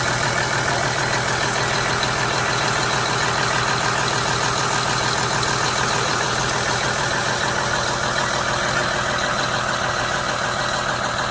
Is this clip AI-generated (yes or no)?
no